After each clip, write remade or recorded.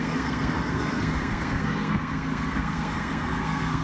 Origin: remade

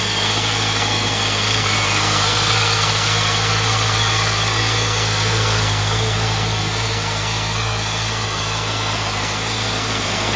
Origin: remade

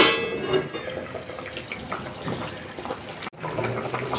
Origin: recorded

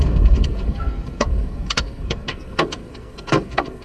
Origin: remade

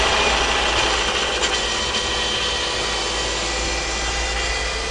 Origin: recorded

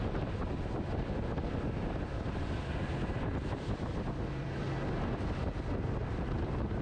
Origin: recorded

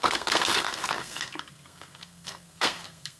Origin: remade